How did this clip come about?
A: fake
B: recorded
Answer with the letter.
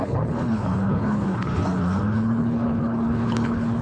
A